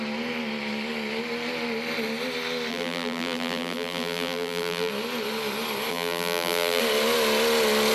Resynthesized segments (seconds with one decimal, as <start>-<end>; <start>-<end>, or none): 2.7-4.9; 5.9-6.8